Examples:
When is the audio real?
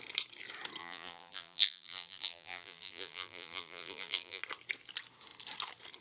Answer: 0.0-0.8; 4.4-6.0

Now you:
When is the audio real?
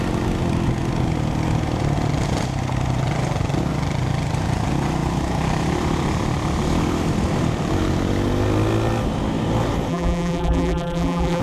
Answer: 0.0-9.9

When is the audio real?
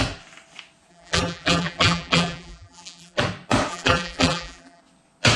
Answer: 0.0-0.9; 3.2-3.7; 4.8-5.4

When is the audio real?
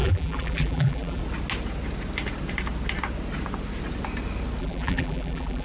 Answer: 1.2-4.6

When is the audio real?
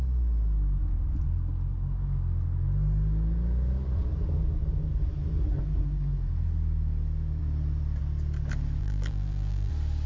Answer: 0.0-8.8; 9.7-10.1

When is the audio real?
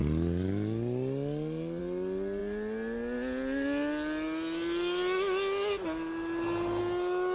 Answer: 0.0-7.3